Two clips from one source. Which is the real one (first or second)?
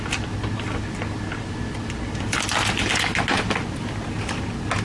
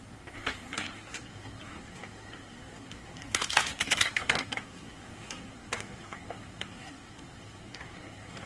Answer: first